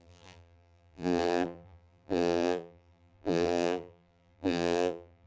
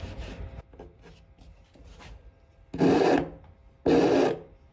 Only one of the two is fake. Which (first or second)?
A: first